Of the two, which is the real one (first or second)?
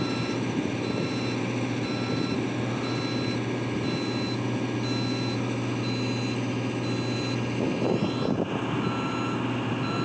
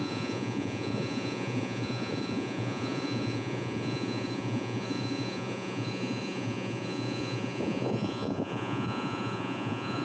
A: first